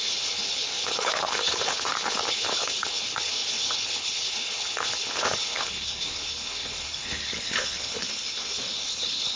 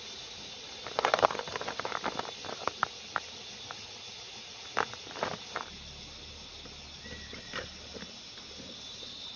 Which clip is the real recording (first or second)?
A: second